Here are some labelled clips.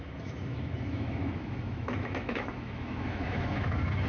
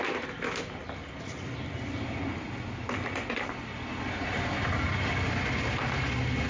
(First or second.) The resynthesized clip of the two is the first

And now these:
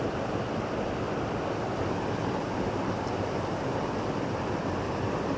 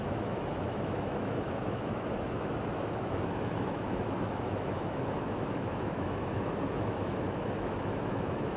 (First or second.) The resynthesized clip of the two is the second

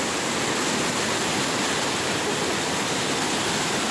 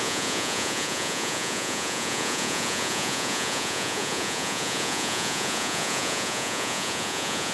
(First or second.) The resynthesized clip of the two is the second